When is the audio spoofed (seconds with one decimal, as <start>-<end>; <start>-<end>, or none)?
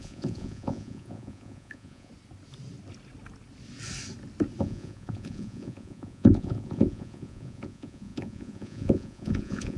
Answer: 0.0-2.1; 4.6-9.8